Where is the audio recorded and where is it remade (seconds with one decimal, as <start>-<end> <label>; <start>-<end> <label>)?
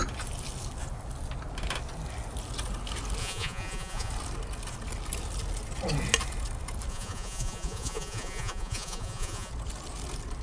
0.0-3.2 recorded; 3.2-4.1 remade; 4.1-6.9 recorded; 6.9-9.5 remade; 9.5-10.4 recorded